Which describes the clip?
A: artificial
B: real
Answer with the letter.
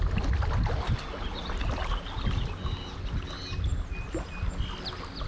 B